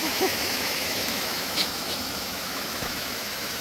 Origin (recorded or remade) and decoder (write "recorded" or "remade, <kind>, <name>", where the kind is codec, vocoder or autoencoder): remade, autoencoder, DAC-VAE